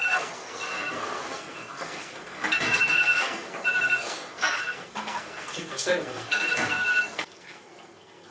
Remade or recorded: remade